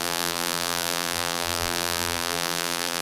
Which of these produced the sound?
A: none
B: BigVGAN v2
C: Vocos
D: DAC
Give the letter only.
B